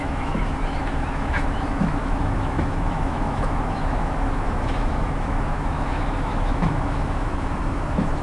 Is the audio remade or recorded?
remade